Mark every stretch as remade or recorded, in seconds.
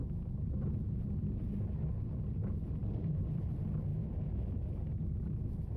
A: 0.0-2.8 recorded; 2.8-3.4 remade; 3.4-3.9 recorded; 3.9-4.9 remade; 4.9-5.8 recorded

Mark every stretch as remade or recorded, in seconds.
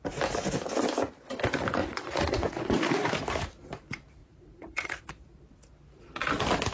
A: 0.0-1.8 recorded; 1.8-3.1 remade; 3.1-4.2 recorded; 4.2-5.1 remade; 5.1-6.7 recorded